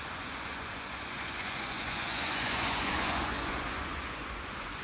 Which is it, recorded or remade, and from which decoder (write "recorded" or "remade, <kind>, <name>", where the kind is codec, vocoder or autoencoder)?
remade, vocoder, Vocos